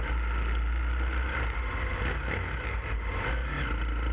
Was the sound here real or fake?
real